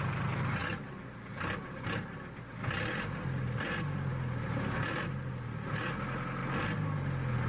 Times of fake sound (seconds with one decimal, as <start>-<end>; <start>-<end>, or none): none